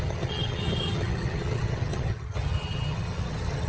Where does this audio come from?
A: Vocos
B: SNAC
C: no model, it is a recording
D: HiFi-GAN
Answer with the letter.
D